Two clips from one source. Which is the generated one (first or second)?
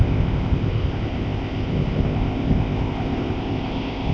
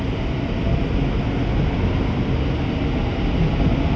first